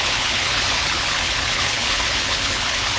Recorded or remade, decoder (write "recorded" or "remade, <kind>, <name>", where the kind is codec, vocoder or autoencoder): remade, codec, HILCodec